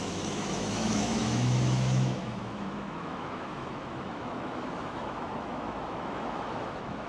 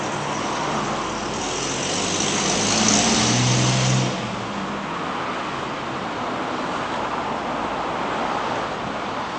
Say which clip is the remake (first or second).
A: first